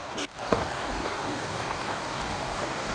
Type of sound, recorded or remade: remade